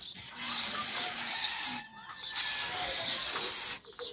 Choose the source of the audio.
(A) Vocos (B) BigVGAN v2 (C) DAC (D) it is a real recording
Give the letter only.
D